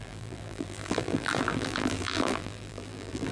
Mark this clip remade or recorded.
remade